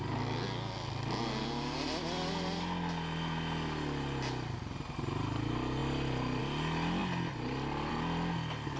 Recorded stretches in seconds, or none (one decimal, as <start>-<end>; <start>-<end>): 0.0-8.8